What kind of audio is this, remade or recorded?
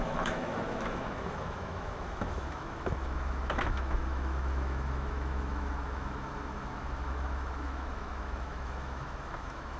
remade